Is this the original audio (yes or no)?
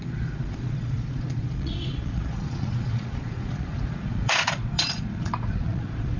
no